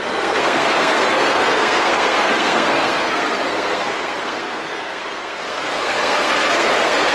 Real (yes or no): no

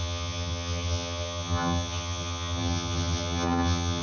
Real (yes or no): no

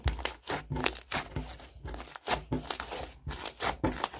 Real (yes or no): yes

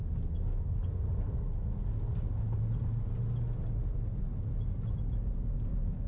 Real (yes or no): yes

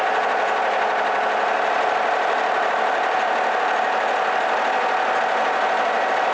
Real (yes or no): yes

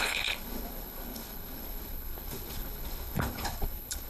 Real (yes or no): no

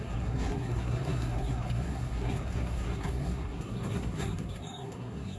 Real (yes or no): no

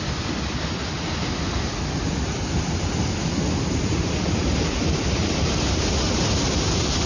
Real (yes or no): yes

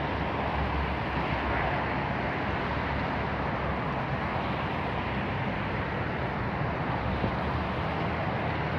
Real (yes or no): yes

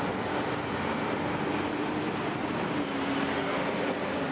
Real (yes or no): yes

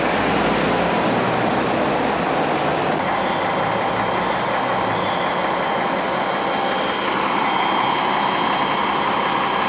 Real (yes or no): yes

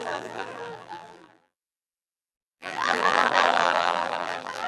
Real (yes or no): no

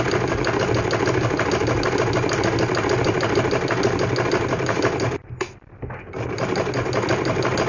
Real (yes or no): yes